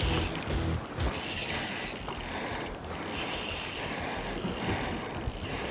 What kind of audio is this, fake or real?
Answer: real